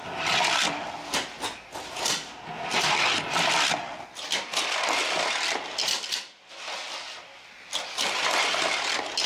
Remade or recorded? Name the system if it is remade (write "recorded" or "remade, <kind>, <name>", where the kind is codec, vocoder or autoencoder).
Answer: recorded